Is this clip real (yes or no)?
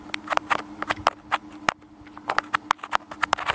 yes